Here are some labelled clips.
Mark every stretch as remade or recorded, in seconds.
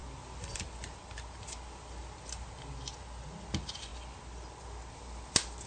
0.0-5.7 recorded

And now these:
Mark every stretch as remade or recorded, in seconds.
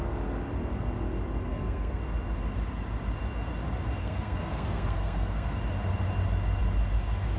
0.0-1.5 recorded; 1.5-2.0 remade; 2.0-4.0 recorded; 4.0-5.6 remade; 5.6-7.4 recorded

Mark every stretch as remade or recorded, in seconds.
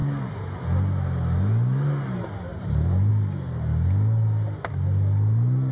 0.0-0.6 remade; 0.6-2.5 recorded; 2.5-3.1 remade; 3.1-5.7 recorded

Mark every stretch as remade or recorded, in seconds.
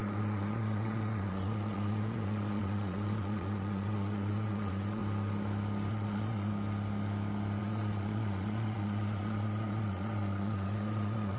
0.0-5.0 remade; 5.0-5.9 recorded; 5.9-6.5 remade; 6.5-7.6 recorded; 7.6-11.4 remade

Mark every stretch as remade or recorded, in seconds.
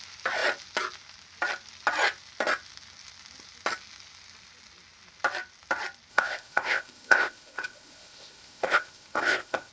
0.0-6.1 recorded; 6.1-9.7 remade